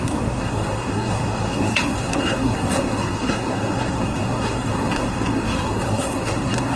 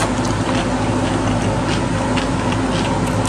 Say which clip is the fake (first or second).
first